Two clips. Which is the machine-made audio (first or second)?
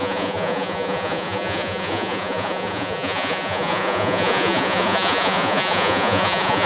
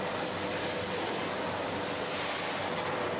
first